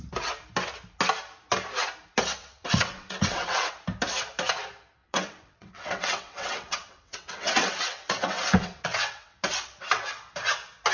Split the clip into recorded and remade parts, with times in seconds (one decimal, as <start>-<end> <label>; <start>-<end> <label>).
0.0-2.4 recorded; 2.4-3.7 remade; 3.7-5.0 recorded; 5.0-10.2 remade; 10.2-10.9 recorded